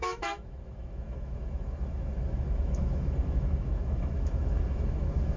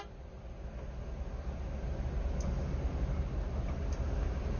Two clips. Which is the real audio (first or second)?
second